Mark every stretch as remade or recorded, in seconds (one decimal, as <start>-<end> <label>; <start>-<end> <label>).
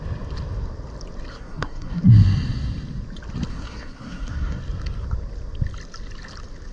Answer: 0.0-1.3 recorded; 1.3-2.0 remade; 2.0-3.5 recorded; 3.5-4.6 remade; 4.6-6.7 recorded